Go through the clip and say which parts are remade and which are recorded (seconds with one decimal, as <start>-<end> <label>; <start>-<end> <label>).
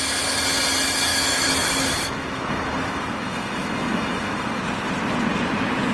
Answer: 0.0-1.1 recorded; 1.1-4.6 remade; 4.6-5.9 recorded